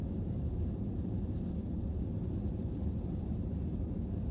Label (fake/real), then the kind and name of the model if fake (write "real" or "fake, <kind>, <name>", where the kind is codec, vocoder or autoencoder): fake, vocoder, BigVGAN v2